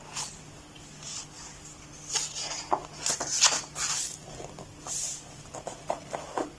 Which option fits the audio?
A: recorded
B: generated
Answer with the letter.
A